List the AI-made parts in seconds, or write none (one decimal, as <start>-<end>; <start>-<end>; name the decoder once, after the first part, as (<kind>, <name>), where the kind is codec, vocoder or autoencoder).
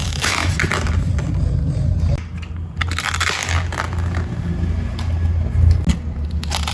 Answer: 0.0-0.5 (autoencoder, DAC-VAE)